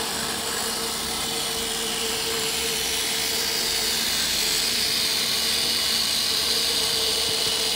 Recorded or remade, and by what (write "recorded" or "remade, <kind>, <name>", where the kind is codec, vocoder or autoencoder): recorded